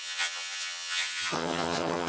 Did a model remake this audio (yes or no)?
yes